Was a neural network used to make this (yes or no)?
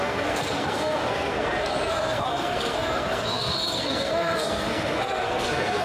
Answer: yes